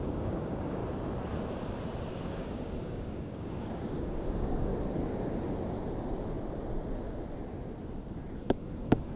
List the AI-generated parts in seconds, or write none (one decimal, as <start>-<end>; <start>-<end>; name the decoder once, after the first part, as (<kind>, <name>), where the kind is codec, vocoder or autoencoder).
0.0-0.8 (codec, DAC); 2.1-4.7; 8.4-9.2